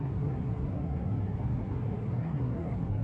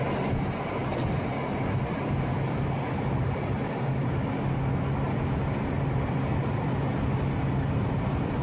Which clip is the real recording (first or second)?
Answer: second